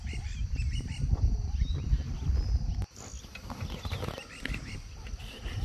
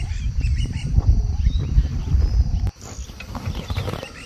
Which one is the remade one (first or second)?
second